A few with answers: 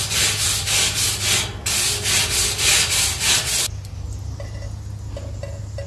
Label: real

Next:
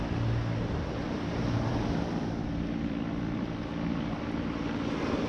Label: fake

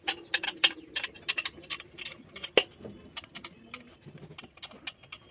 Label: real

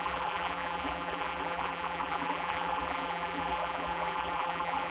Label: fake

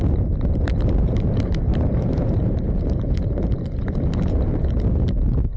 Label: fake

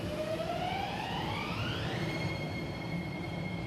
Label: fake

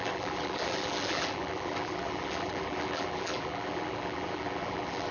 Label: fake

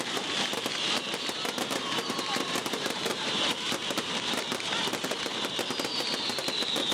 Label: fake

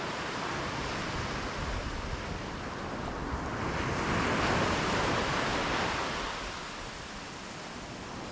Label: real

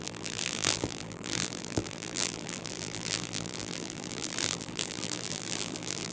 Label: fake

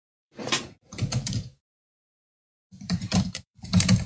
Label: fake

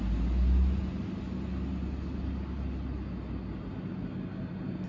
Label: real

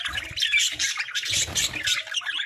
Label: real